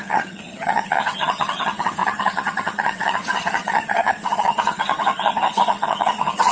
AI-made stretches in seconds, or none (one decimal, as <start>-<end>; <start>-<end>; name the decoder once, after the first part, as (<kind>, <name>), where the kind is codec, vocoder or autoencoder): 0.0-6.5 (vocoder, HiFi-GAN)